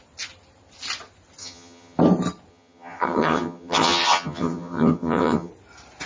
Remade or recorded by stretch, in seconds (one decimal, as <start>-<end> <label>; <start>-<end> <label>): 0.0-1.4 recorded; 1.4-2.0 remade; 2.0-2.5 recorded; 2.5-5.5 remade; 5.5-6.1 recorded